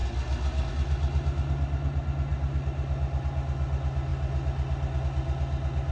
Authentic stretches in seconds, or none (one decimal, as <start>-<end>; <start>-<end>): 0.0-5.9